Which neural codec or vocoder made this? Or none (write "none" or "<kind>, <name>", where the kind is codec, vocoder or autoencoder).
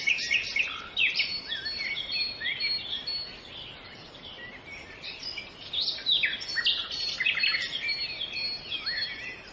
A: none